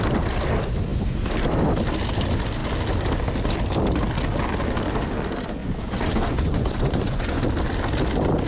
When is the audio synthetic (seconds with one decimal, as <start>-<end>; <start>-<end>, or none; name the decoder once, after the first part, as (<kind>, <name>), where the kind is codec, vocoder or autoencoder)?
5.6-7.4 (vocoder, Vocos)